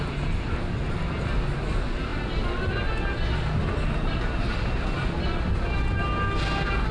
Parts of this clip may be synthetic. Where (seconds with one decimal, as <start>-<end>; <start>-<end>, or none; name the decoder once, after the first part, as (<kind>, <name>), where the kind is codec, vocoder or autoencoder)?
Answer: none